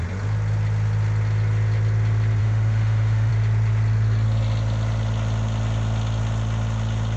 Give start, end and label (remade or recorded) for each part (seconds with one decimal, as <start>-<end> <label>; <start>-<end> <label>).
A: 0.0-2.4 recorded; 2.4-3.3 remade; 3.3-7.2 recorded